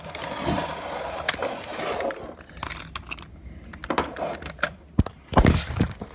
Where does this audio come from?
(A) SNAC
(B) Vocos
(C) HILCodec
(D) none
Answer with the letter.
D